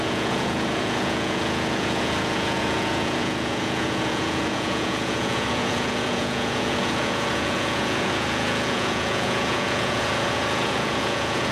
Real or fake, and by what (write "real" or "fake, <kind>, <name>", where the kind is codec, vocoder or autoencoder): fake, vocoder, Vocos